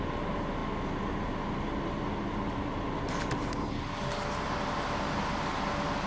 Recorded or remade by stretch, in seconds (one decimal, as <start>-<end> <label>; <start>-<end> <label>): 0.0-6.1 recorded